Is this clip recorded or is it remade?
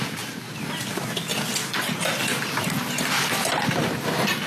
recorded